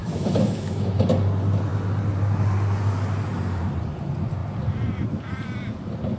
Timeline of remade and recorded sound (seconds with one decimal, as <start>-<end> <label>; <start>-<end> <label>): 0.0-1.0 remade; 1.0-6.2 recorded